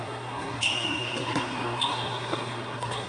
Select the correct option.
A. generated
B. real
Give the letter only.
A